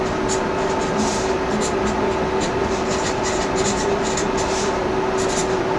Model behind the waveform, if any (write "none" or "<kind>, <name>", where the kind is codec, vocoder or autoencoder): none